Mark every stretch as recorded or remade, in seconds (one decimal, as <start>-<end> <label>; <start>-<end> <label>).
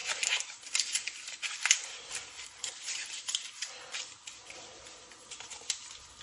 0.0-0.7 remade; 0.7-6.2 recorded